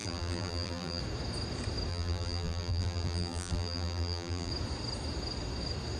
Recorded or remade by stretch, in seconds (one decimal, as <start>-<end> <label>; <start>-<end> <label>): 0.0-1.0 remade; 1.0-1.9 recorded; 1.9-4.5 remade; 4.5-6.0 recorded